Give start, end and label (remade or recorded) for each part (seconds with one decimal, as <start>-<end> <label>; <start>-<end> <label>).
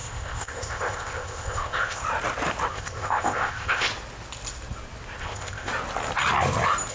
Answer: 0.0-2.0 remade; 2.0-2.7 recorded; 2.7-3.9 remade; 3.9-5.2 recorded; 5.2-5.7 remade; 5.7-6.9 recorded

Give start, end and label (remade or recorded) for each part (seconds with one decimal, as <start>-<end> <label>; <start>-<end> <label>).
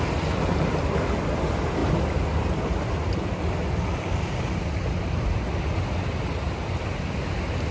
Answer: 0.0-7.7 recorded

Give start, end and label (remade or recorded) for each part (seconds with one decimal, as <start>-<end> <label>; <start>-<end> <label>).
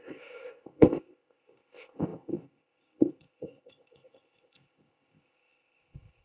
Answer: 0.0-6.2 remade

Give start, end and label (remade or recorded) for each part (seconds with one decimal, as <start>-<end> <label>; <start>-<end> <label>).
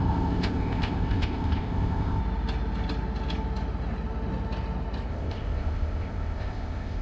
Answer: 0.0-2.2 remade; 2.2-5.1 recorded; 5.1-7.0 remade